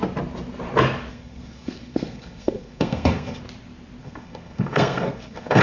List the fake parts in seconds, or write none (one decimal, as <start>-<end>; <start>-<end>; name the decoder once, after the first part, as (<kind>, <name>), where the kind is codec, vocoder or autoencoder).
1.1-3.4 (codec, SNAC); 4.0-5.6